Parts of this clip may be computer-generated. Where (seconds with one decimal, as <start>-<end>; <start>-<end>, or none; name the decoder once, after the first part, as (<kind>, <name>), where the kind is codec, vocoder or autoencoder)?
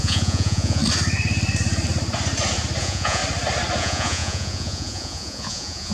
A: 0.0-0.8 (vocoder, Vocos); 2.8-3.2; 3.8-5.9